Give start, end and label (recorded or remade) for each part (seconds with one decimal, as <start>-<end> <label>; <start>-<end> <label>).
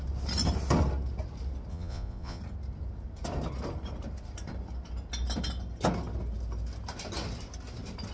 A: 0.0-1.7 recorded; 1.7-2.4 remade; 2.4-8.1 recorded